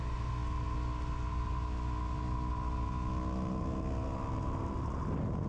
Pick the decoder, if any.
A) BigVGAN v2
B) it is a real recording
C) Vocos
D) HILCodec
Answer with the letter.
B